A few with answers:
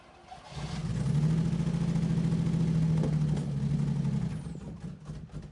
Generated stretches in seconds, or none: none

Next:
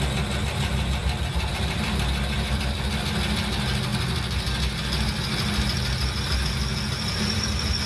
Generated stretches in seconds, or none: none

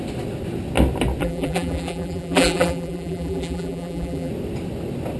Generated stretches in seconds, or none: 1.2-4.3 (vocoder, BigVGAN v2)

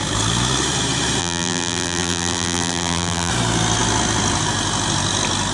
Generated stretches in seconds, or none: 1.2-3.3 (vocoder, BigVGAN v2)

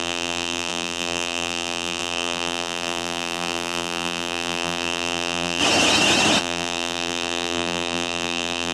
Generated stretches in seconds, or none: 0.0-5.6 (vocoder, BigVGAN v2); 6.4-8.7

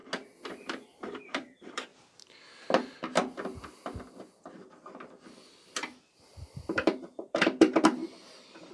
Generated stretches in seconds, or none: 0.5-1.9 (vocoder, BigVGAN v2); 5.7-8.0

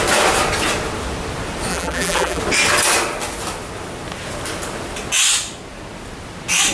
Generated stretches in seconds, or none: 1.7-2.4 (vocoder, BigVGAN v2)

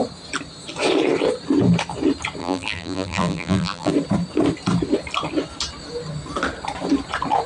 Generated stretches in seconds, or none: 2.4-3.9 (vocoder, BigVGAN v2)